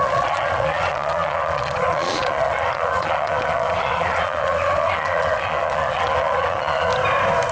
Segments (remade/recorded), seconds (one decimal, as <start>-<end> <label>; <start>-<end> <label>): 0.0-6.9 remade; 6.9-7.5 recorded